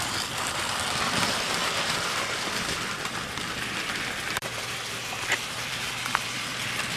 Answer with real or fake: fake